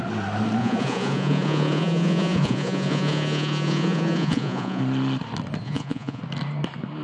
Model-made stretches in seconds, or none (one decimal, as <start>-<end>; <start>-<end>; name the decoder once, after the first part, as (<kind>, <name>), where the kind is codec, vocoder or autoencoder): 0.6-4.8 (vocoder, Vocos); 5.6-6.2